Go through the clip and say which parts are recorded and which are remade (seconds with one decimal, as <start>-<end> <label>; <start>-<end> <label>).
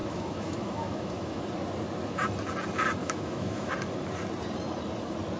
0.0-1.4 remade; 1.4-3.0 recorded; 3.0-3.7 remade; 3.7-5.4 recorded